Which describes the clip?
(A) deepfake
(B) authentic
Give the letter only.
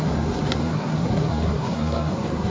A